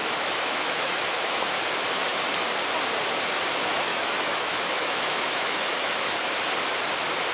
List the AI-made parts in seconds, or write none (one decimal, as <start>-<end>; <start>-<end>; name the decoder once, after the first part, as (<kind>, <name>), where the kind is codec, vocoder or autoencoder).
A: 0.0-1.5 (autoencoder, DAC-VAE); 3.9-6.3